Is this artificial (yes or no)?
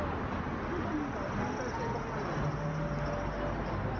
no